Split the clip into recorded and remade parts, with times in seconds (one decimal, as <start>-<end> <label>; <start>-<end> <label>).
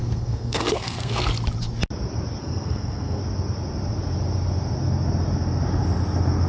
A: 0.0-1.3 remade; 1.3-2.4 recorded; 2.4-3.2 remade; 3.2-6.5 recorded